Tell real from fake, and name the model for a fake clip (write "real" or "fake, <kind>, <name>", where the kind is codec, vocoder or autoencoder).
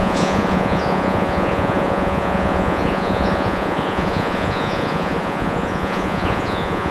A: fake, vocoder, Vocos